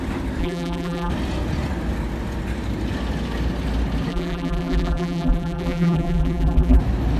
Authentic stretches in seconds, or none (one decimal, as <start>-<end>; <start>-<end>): 0.0-0.4; 1.1-4.1; 6.8-7.2